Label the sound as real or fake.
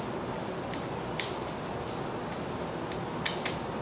real